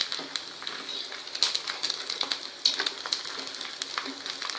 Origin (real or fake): real